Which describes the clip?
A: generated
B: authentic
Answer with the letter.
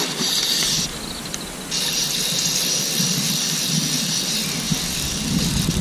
B